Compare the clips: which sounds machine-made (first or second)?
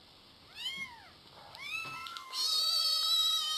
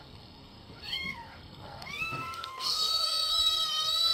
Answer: second